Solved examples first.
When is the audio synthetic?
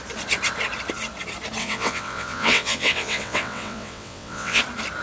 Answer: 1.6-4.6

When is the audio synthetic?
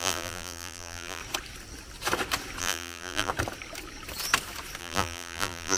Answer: 0.0-1.2; 2.6-3.3; 4.8-5.8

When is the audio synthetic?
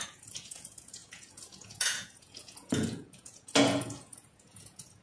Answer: 0.0-5.0